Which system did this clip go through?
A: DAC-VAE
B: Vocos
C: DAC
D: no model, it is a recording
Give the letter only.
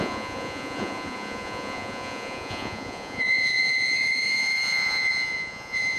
B